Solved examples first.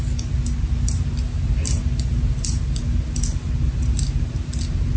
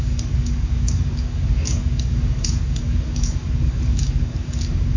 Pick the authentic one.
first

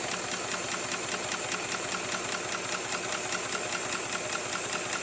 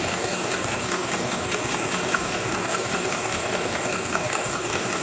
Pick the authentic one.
first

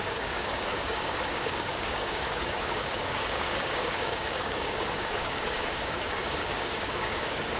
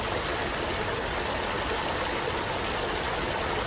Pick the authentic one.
second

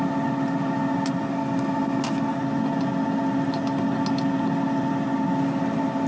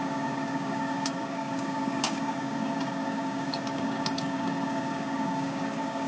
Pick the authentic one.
first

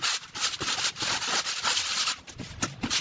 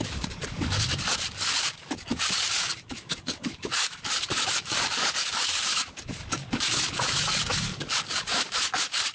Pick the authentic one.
first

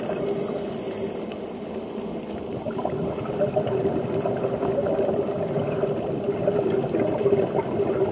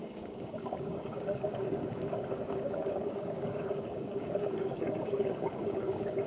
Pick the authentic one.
first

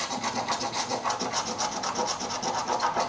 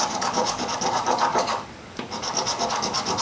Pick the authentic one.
first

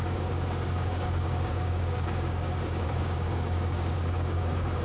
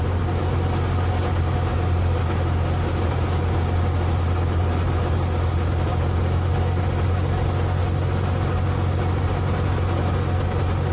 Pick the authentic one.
second